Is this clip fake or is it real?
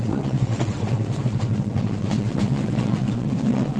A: fake